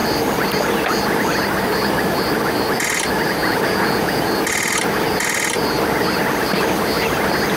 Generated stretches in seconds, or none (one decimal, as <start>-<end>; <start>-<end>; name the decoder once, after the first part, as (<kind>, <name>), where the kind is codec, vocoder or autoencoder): 3.4-4.2 (vocoder, Vocos)